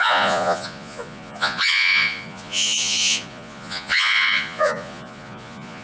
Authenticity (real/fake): fake